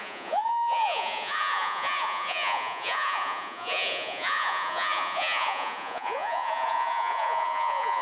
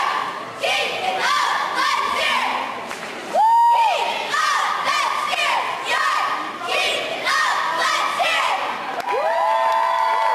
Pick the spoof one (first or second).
first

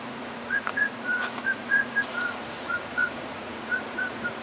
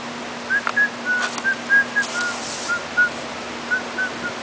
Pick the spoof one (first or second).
first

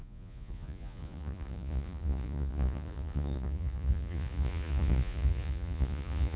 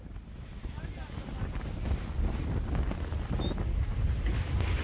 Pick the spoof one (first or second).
first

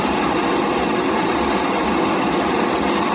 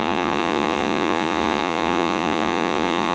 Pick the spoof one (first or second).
second